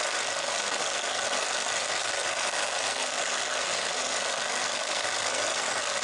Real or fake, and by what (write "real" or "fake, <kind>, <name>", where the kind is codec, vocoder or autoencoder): fake, codec, SNAC